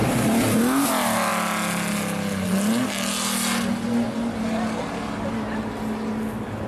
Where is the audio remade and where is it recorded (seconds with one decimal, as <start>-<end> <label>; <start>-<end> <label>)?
0.0-6.7 recorded